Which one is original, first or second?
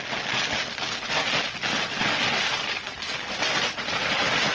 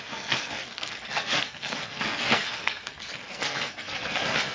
first